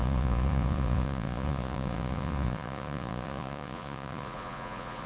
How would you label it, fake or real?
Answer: fake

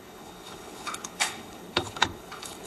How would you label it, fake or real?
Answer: fake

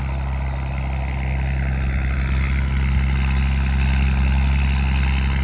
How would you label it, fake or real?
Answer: real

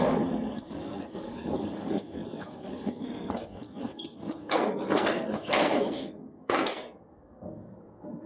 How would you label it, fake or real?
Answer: fake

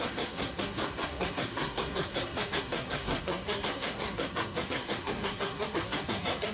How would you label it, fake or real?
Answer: fake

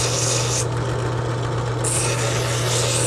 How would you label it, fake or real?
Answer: real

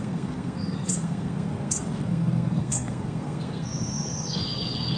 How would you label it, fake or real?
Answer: fake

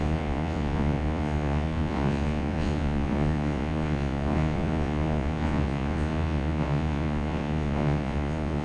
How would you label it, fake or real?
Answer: fake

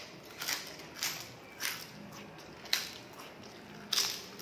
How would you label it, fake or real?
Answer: real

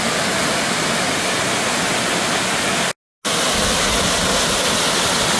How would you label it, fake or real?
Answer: real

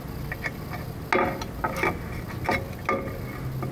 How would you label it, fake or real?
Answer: real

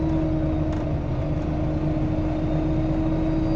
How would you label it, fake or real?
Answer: real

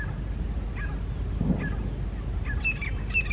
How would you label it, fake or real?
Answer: real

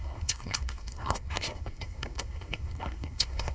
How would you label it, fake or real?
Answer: fake